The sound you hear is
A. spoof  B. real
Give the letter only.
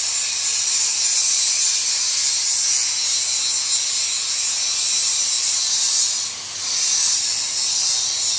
B